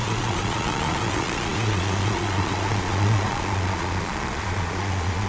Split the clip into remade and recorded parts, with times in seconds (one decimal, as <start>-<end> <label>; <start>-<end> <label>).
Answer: 0.0-5.3 remade